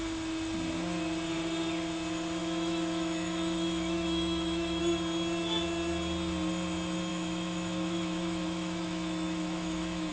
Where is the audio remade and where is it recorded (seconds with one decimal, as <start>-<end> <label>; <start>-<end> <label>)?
0.0-2.4 recorded; 2.4-4.8 remade; 4.8-7.1 recorded; 7.1-10.1 remade